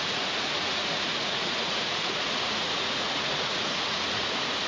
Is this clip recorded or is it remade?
remade